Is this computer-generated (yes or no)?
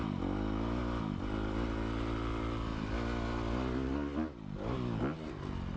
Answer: no